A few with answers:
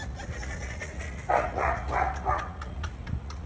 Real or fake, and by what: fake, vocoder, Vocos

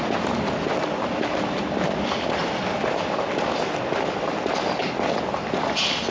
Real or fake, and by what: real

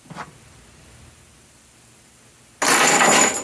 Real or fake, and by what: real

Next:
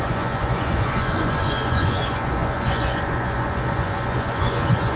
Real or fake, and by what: fake, vocoder, Vocos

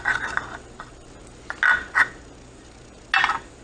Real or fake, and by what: real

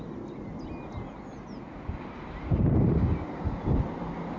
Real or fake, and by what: real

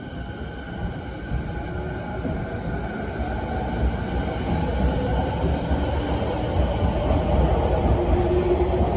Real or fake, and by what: real